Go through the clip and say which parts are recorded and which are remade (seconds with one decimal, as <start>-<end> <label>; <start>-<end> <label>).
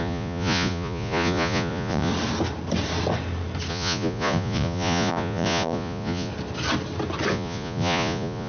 0.0-2.1 remade; 2.1-3.7 recorded; 3.7-6.3 remade; 6.3-7.3 recorded; 7.3-8.5 remade